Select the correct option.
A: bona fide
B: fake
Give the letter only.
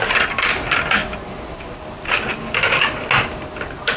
A